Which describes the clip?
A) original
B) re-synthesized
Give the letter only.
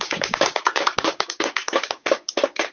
B